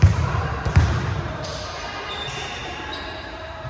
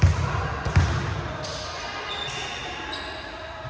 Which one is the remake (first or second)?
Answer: first